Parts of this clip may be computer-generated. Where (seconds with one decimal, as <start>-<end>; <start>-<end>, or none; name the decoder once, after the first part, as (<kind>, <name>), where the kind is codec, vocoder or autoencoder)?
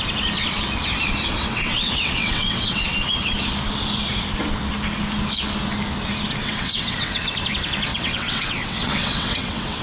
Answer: 1.3-2.9 (vocoder, WaveNeXt); 6.4-7.2; 7.9-9.8